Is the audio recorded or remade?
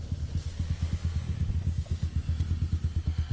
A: recorded